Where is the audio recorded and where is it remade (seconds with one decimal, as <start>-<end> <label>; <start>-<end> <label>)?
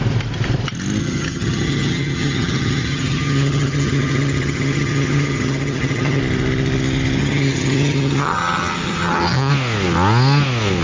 0.0-1.0 recorded; 1.0-6.2 remade; 6.2-7.2 recorded; 7.2-9.5 remade; 9.5-10.8 recorded